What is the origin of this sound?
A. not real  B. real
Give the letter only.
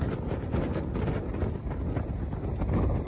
B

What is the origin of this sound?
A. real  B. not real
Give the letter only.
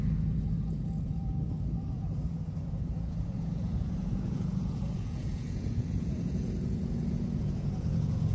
B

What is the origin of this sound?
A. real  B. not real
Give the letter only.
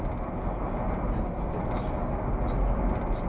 A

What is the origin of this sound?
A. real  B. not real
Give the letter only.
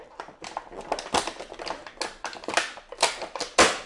A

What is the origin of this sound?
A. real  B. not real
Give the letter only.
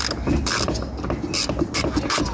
A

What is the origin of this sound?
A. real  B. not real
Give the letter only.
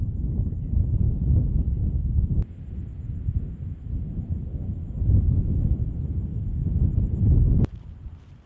A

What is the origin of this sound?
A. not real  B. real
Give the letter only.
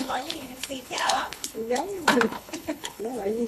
A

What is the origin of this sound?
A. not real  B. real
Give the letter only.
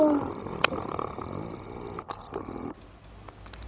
B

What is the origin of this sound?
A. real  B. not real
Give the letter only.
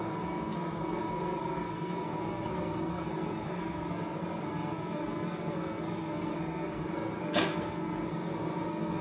B